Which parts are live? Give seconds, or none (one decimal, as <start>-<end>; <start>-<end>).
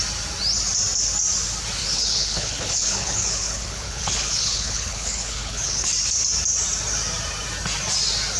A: 0.0-1.8; 5.9-8.4